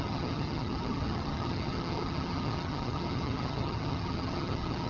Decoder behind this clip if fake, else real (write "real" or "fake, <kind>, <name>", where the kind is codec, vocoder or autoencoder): fake, vocoder, HiFi-GAN